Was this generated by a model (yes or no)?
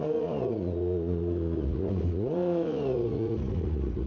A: yes